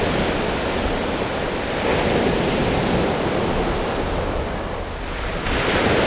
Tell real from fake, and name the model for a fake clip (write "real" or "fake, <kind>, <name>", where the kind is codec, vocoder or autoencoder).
real